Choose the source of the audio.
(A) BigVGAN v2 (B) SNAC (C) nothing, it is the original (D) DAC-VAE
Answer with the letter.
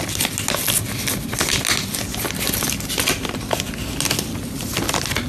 C